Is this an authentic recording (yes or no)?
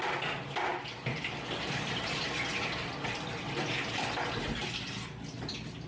yes